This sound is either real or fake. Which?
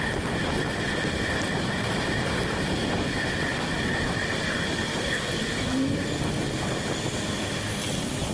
real